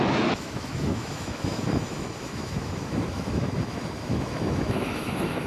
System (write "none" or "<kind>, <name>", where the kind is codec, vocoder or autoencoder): autoencoder, DAC-VAE